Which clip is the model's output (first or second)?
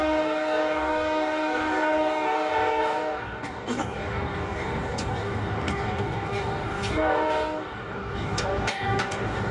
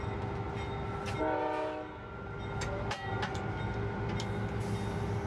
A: first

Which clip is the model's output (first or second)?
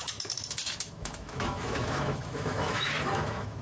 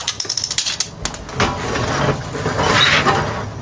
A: first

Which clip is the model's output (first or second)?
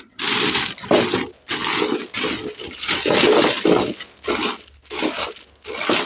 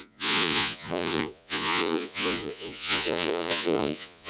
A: second